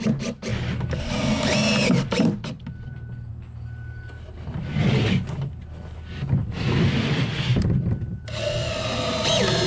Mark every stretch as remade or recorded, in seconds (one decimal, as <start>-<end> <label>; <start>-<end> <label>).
0.0-9.7 recorded